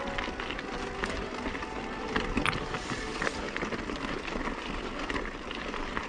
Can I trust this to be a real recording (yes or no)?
yes